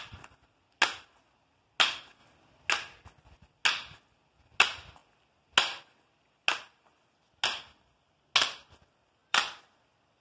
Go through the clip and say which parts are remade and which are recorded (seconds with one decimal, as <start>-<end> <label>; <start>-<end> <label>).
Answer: 0.0-9.2 recorded; 9.2-10.2 remade